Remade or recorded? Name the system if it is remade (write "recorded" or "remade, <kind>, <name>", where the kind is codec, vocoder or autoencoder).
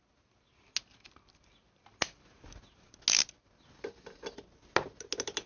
recorded